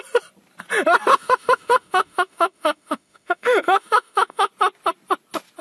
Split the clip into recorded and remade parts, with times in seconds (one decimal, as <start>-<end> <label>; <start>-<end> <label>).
0.0-1.1 recorded; 1.1-4.5 remade; 4.5-5.6 recorded